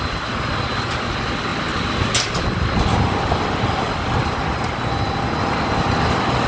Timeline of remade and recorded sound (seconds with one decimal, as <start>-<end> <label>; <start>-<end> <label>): 0.0-6.5 recorded